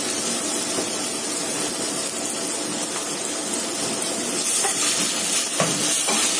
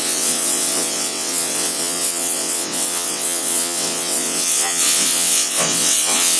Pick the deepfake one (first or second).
second